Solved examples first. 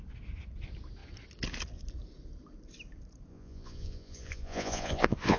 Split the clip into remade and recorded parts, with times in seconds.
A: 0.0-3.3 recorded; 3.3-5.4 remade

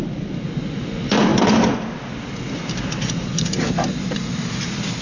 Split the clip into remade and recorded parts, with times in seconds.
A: 0.0-5.0 recorded

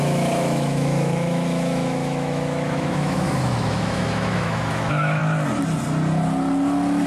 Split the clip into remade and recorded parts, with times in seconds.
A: 0.0-5.2 remade; 5.2-7.1 recorded

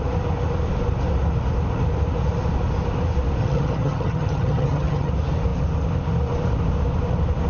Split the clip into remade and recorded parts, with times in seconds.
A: 0.0-3.4 recorded; 3.4-5.1 remade; 5.1-7.5 recorded

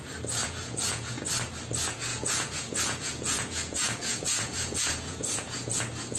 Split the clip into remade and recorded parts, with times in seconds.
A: 0.0-0.4 recorded; 0.4-1.1 remade; 1.1-2.1 recorded; 2.1-5.8 remade; 5.8-6.2 recorded

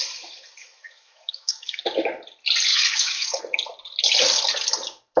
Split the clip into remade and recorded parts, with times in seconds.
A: 0.0-0.6 recorded; 0.6-1.8 remade; 1.8-2.7 recorded; 2.7-3.4 remade; 3.4-5.2 recorded